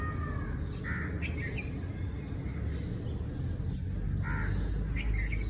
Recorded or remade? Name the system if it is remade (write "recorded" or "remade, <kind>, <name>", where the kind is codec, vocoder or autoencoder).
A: recorded